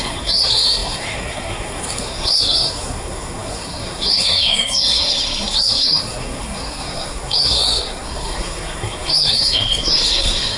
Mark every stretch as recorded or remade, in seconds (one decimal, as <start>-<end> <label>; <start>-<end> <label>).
0.0-10.6 remade